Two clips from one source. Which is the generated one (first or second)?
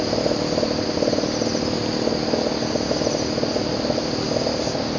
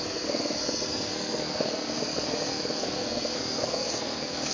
second